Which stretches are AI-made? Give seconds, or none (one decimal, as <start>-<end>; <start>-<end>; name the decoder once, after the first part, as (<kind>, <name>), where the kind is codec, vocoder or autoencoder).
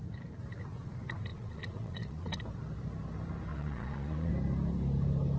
1.3-2.4 (vocoder, Vocos); 3.5-4.3